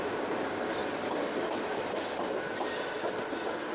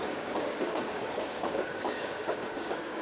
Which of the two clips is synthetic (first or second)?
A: second